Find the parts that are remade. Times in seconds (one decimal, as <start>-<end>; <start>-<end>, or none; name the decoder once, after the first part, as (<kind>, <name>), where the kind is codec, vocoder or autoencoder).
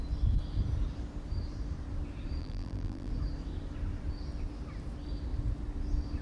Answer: 2.4-3.1 (vocoder, BigVGAN v2)